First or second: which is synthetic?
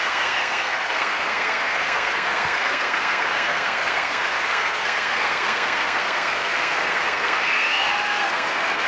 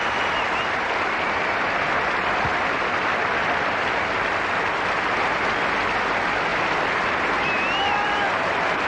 first